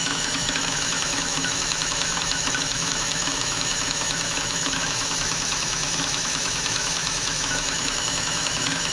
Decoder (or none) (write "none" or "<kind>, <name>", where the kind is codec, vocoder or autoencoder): autoencoder, DAC-VAE